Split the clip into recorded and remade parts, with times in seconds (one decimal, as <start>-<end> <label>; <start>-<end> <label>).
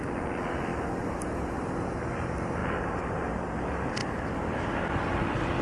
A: 0.0-5.6 recorded